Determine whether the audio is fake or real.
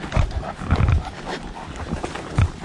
real